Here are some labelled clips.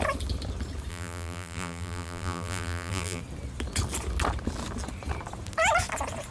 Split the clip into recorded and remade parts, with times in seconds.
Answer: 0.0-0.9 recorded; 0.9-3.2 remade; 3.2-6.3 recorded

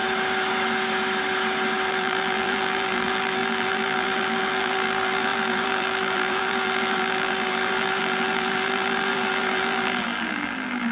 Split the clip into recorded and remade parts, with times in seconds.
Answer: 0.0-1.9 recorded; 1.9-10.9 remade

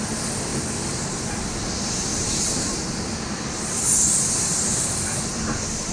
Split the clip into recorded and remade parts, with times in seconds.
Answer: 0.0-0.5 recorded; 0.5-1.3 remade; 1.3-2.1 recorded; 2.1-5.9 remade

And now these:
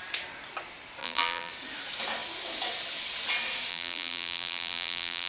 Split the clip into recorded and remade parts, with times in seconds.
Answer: 0.0-1.0 recorded; 1.0-1.5 remade; 1.5-3.7 recorded; 3.7-5.3 remade

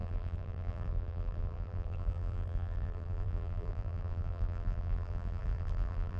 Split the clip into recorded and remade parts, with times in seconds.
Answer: 0.0-6.2 remade